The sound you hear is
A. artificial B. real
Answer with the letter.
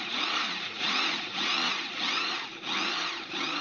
A